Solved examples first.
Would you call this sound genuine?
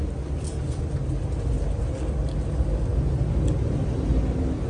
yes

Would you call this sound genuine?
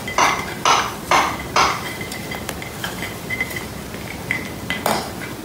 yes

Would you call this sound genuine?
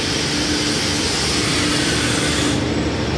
yes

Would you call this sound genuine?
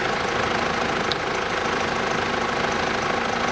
yes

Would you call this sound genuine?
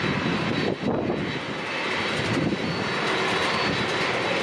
yes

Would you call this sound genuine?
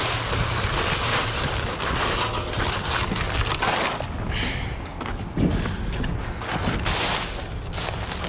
yes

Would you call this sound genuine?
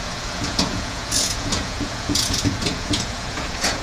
no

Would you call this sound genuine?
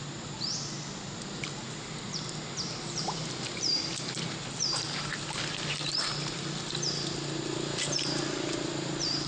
yes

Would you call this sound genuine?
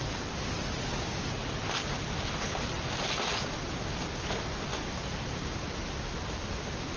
yes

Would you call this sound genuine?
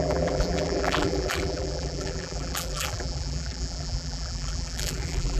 no